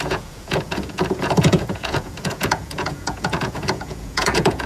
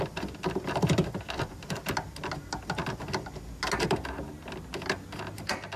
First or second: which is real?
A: second